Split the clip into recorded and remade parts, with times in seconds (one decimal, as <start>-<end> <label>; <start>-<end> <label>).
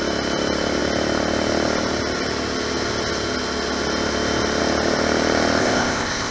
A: 0.0-5.6 recorded; 5.6-6.3 remade